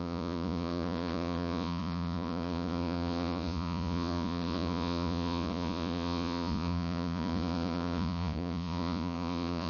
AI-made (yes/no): yes